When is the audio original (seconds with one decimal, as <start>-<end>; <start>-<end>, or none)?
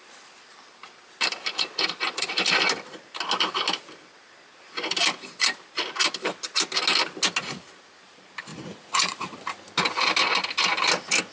0.0-8.5; 9.5-11.3